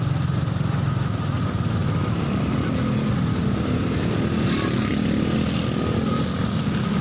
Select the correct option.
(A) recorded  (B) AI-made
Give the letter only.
A